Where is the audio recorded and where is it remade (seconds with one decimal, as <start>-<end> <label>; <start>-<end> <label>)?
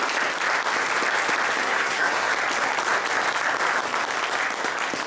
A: 0.0-1.6 recorded; 1.6-2.3 remade; 2.3-5.1 recorded